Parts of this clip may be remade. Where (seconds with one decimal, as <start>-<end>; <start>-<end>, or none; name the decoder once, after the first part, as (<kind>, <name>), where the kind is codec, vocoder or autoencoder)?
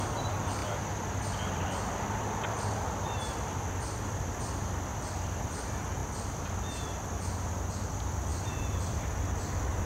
8.3-9.0 (vocoder, BigVGAN v2)